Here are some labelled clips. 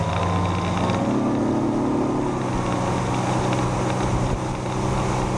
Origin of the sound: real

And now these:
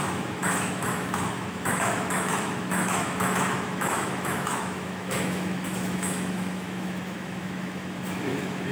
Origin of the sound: fake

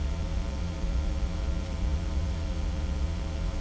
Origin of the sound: fake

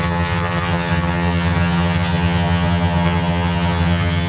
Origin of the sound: fake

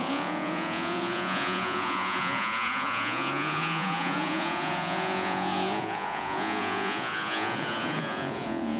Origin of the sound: fake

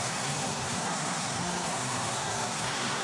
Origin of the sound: fake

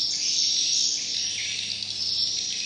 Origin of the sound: real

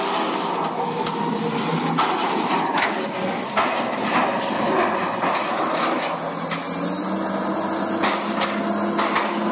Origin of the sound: real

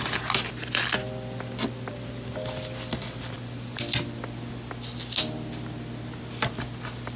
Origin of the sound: real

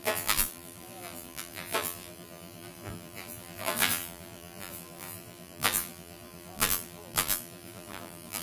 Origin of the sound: fake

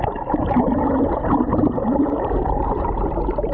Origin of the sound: fake